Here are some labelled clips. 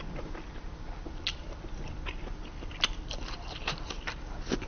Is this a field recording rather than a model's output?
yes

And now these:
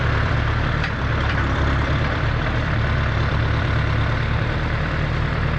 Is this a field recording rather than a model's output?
no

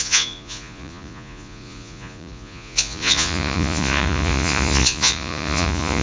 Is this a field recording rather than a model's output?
no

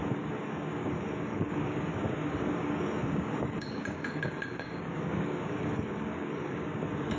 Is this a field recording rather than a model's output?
no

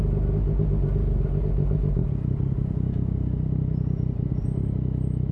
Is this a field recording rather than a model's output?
yes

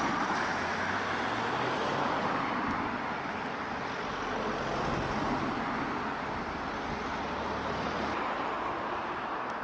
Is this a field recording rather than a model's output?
yes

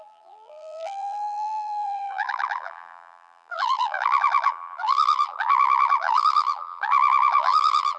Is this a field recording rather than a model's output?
no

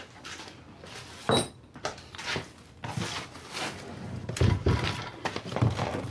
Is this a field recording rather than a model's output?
yes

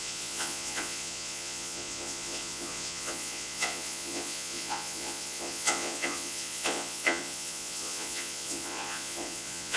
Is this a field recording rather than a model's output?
no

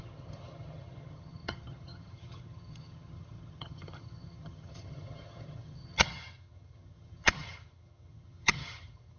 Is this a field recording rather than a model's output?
no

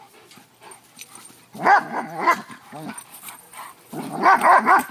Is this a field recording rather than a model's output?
yes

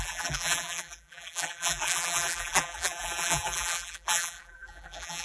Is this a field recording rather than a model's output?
no